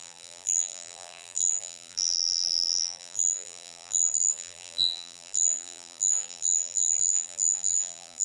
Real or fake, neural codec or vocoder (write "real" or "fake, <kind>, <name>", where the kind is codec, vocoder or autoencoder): fake, vocoder, BigVGAN v2